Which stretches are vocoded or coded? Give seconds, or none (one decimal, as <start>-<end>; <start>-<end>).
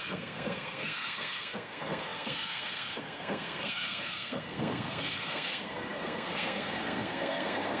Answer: 0.0-7.8